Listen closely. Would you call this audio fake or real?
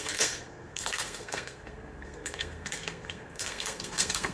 fake